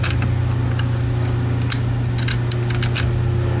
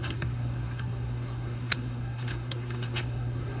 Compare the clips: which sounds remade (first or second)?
second